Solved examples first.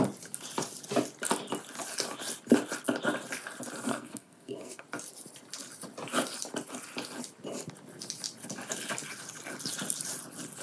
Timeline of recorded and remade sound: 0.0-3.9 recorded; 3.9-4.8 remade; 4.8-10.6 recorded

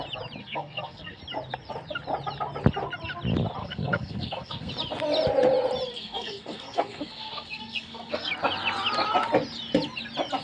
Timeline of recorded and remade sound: 0.0-0.4 recorded; 0.4-1.2 remade; 1.2-3.6 recorded; 3.6-4.7 remade; 4.7-5.9 recorded; 5.9-8.3 remade; 8.3-10.4 recorded

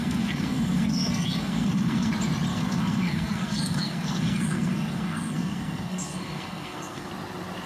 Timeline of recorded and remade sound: 0.0-2.1 remade; 2.1-2.5 recorded; 2.5-7.1 remade; 7.1-7.7 recorded

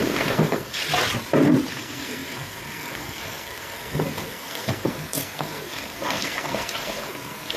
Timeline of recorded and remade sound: 0.0-0.8 remade; 0.8-1.7 recorded; 1.7-7.6 remade

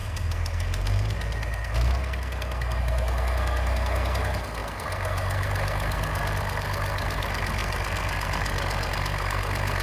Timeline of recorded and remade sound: 0.0-9.8 remade